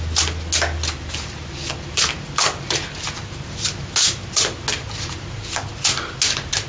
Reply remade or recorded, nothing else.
recorded